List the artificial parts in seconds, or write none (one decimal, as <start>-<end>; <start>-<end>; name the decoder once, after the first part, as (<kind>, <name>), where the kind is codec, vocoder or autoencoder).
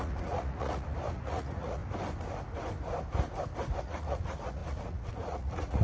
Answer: 0.0-1.8 (vocoder, Vocos); 3.8-5.8